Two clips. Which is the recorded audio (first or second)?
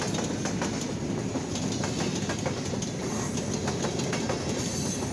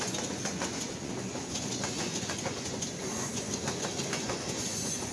first